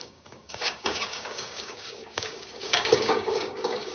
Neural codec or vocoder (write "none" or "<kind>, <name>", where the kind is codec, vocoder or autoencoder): codec, DAC